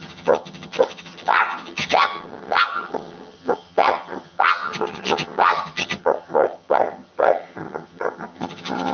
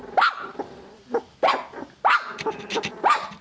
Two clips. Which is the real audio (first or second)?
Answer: second